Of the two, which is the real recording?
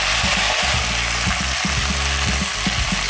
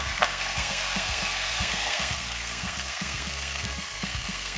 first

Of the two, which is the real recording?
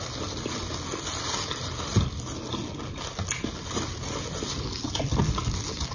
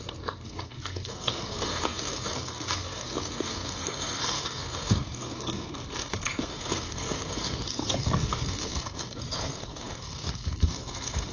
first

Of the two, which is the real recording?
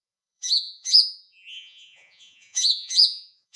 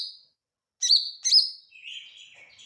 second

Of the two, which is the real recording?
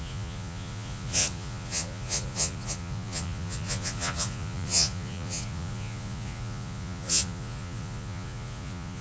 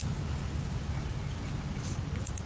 second